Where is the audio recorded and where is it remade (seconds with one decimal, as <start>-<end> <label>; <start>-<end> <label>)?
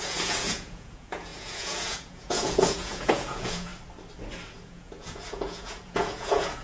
0.0-3.7 remade; 3.7-4.5 recorded; 4.5-6.6 remade